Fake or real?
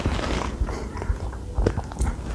real